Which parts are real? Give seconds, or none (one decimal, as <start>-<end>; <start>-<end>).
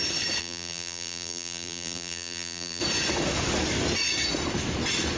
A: 0.0-0.4; 2.8-5.2